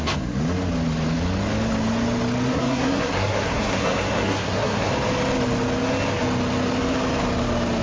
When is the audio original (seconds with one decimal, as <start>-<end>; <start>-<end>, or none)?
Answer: 0.0-2.5; 4.9-7.8